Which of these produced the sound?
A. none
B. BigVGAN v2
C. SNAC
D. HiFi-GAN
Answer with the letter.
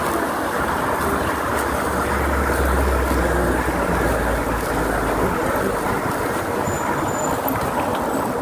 A